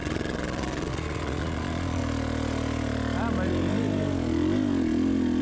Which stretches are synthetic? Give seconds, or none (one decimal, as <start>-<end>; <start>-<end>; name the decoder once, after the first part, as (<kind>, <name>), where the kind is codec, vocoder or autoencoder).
0.0-2.0 (vocoder, Vocos)